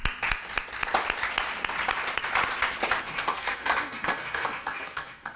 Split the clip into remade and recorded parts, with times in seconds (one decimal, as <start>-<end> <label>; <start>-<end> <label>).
0.0-3.0 recorded; 3.0-5.4 remade